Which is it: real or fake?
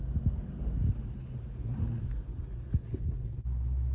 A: real